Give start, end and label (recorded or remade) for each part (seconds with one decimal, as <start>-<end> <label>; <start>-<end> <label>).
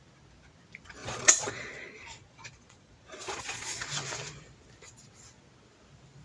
0.0-1.0 recorded; 1.0-1.7 remade; 1.7-2.2 recorded; 2.2-3.8 remade; 3.8-6.2 recorded